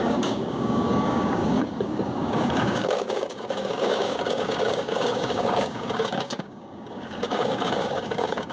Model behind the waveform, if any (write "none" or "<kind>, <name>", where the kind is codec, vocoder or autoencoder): codec, DAC